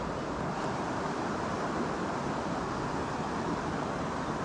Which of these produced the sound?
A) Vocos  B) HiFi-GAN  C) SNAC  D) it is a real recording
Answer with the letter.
D